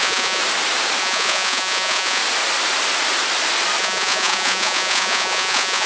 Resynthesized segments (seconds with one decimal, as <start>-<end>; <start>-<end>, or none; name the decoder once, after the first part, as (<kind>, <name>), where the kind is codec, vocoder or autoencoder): 0.0-0.4 (vocoder, Vocos); 1.0-2.2; 3.8-5.9